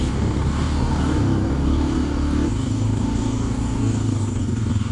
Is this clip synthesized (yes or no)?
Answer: yes